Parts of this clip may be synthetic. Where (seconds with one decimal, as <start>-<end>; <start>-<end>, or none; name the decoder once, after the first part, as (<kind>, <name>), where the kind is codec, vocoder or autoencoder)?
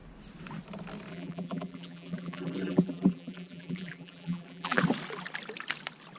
1.1-4.8 (vocoder, BigVGAN v2)